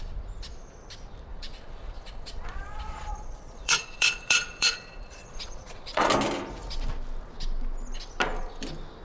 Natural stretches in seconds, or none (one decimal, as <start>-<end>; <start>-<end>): 0.0-1.3; 6.1-9.0